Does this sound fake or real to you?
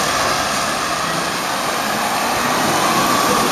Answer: real